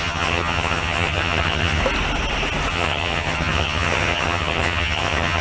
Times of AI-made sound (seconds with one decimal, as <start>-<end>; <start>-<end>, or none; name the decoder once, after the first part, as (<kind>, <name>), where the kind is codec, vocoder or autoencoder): 0.0-1.8 (vocoder, HiFi-GAN); 2.7-5.4